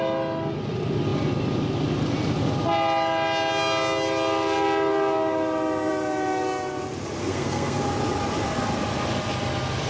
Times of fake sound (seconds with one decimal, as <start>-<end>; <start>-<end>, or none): 7.2-7.8